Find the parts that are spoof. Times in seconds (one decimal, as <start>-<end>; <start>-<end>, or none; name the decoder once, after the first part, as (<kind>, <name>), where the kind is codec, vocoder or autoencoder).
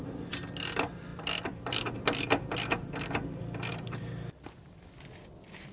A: 0.0-5.7 (vocoder, BigVGAN v2)